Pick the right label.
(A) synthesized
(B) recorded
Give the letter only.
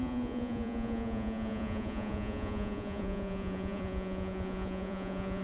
A